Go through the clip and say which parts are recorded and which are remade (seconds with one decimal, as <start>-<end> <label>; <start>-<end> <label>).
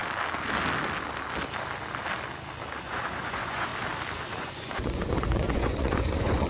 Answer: 0.0-2.8 recorded; 2.8-3.7 remade; 3.7-4.4 recorded; 4.4-6.5 remade